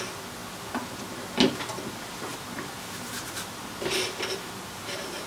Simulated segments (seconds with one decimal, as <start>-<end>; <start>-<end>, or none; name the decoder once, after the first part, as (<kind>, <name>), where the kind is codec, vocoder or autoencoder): 2.3-5.3 (vocoder, BigVGAN v2)